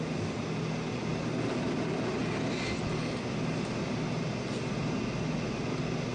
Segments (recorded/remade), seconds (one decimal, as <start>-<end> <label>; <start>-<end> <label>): 0.0-6.1 recorded